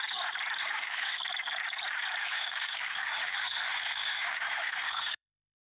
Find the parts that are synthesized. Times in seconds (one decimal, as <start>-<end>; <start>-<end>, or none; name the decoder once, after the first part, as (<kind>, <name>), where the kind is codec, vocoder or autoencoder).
0.6-1.2 (autoencoder, DAC-VAE); 2.2-5.6